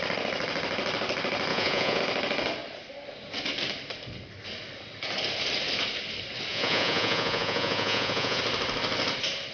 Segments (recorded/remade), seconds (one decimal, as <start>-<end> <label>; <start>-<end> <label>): 0.0-1.5 recorded; 1.5-2.0 remade; 2.0-6.5 recorded; 6.5-8.4 remade; 8.4-9.5 recorded